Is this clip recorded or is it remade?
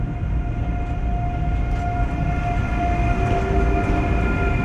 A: recorded